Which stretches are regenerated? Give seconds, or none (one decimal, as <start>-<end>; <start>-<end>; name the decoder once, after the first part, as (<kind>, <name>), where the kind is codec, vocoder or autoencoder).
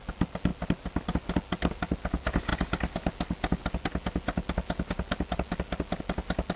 none